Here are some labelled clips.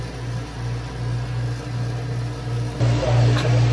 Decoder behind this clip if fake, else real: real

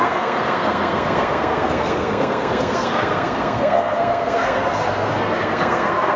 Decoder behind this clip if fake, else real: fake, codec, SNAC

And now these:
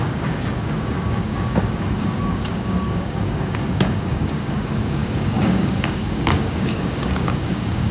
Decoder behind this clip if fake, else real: fake, codec, DAC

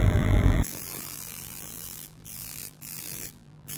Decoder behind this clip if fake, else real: fake, vocoder, BigVGAN v2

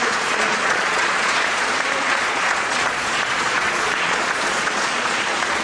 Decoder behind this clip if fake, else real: fake, vocoder, Vocos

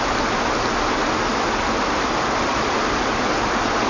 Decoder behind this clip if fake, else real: real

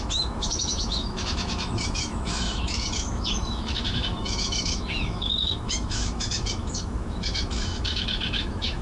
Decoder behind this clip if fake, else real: fake, autoencoder, DAC-VAE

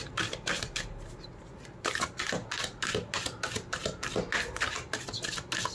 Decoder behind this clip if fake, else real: real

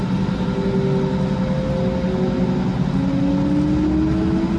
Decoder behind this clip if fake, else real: real